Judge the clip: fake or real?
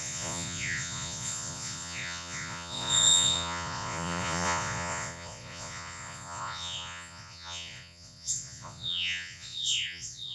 fake